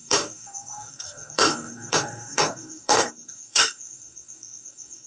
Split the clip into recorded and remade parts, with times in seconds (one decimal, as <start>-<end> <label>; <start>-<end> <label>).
0.0-5.1 remade